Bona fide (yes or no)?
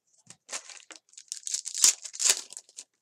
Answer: yes